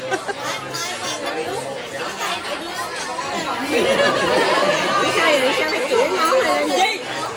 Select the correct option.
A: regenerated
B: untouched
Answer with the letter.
B